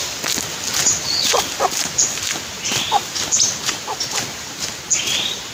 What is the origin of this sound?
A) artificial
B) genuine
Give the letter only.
B